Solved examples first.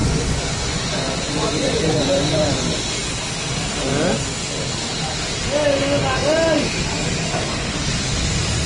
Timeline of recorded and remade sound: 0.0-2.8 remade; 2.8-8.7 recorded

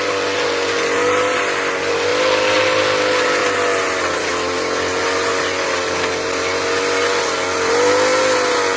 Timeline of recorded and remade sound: 0.0-8.8 recorded

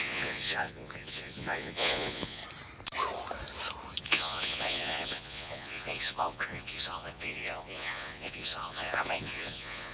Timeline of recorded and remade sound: 0.0-2.4 remade; 2.4-4.0 recorded; 4.0-9.9 remade

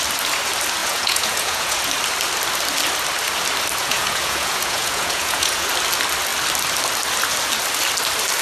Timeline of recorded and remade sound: 0.0-0.8 recorded; 0.8-1.8 remade; 1.8-3.8 recorded; 3.8-5.7 remade; 5.7-8.4 recorded

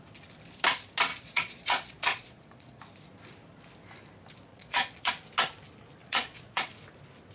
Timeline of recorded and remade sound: 0.0-1.1 recorded; 1.1-2.8 remade; 2.8-4.5 recorded; 4.5-5.1 remade; 5.1-6.0 recorded; 6.0-6.7 remade; 6.7-7.3 recorded

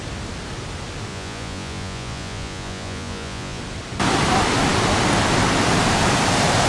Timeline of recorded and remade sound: 0.0-1.1 recorded; 1.1-3.6 remade; 3.6-6.7 recorded

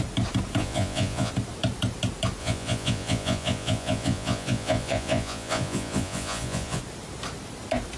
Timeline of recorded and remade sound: 0.0-0.6 recorded; 0.6-1.3 remade; 1.3-2.4 recorded; 2.4-6.8 remade; 6.8-8.0 recorded

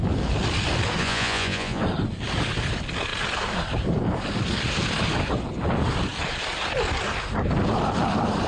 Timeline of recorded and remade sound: 0.0-1.0 recorded; 1.0-1.8 remade; 1.8-8.5 recorded